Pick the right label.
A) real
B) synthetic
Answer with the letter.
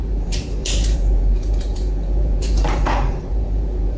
B